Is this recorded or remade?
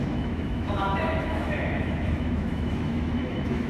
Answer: remade